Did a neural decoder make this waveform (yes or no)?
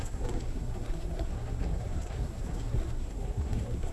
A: yes